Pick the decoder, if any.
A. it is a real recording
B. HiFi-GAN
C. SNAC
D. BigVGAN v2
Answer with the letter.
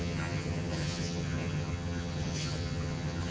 B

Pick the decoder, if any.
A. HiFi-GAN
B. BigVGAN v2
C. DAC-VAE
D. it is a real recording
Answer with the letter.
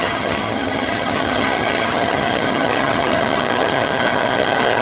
A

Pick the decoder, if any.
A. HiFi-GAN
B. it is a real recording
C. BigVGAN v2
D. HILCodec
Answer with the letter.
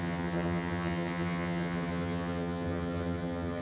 A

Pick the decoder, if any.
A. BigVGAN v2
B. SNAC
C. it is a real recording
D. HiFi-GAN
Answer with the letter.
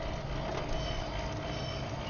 C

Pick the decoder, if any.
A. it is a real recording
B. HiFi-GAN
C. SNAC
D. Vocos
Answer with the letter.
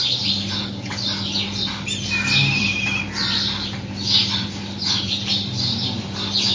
A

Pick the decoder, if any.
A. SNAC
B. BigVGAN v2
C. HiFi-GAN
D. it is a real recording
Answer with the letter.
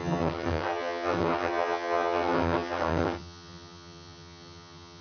C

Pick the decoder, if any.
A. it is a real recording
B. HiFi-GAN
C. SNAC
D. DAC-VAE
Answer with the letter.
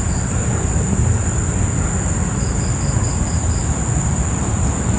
A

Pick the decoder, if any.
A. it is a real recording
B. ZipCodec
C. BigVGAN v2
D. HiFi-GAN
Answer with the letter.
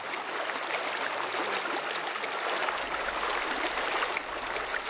A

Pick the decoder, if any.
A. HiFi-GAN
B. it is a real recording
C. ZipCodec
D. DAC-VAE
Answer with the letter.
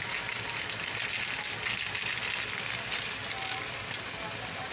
B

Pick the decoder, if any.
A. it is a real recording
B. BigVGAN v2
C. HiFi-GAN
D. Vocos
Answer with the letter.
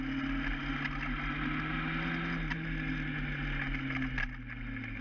A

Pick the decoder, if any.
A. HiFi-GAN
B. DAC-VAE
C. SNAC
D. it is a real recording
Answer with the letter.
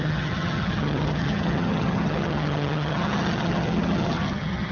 A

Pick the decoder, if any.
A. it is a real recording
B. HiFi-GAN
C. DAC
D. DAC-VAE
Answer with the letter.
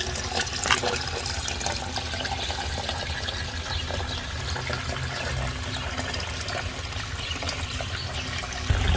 A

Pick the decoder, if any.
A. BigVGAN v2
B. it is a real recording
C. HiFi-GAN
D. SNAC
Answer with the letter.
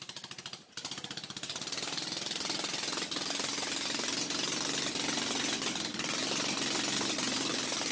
B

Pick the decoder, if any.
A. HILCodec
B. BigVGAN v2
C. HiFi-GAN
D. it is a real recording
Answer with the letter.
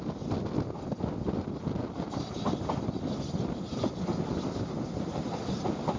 D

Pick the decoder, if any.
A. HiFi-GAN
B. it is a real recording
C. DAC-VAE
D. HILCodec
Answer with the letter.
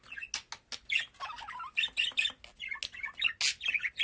B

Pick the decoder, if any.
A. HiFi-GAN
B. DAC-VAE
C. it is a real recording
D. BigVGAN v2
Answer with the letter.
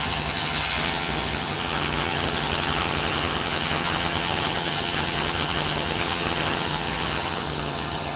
A